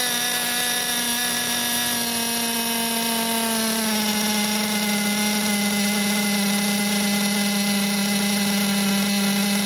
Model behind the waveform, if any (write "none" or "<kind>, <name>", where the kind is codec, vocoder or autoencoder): none